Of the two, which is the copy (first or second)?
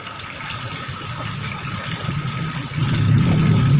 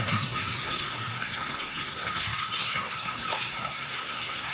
second